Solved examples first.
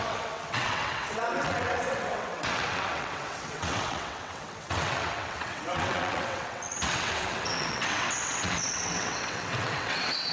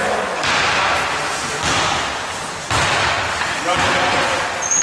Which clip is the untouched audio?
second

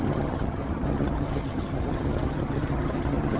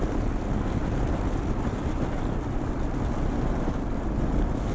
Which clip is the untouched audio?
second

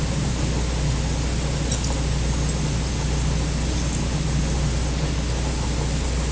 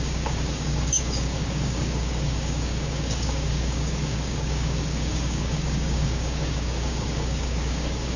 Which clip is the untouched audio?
first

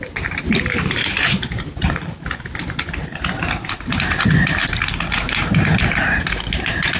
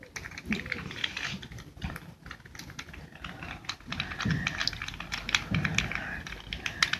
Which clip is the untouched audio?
second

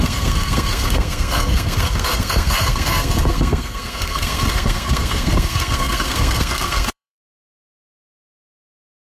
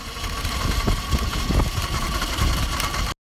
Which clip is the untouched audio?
second